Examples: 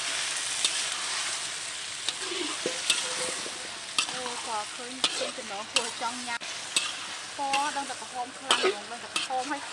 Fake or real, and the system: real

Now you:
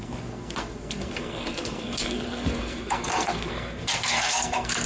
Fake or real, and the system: fake, codec, SNAC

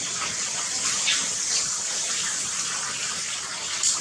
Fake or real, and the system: real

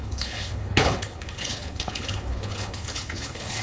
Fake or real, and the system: fake, codec, HILCodec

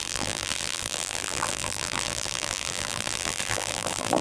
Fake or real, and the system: fake, vocoder, BigVGAN v2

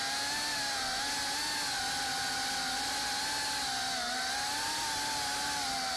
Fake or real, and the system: real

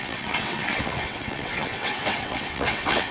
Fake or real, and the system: fake, vocoder, WaveNeXt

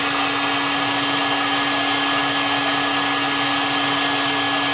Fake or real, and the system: real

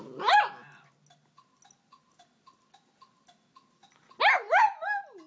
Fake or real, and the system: real